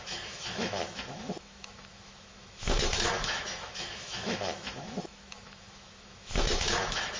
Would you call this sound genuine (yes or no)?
no